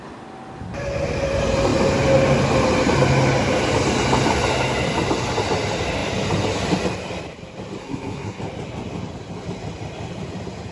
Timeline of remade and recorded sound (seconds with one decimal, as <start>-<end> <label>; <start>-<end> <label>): 0.0-7.8 recorded; 7.8-8.4 remade; 8.4-10.7 recorded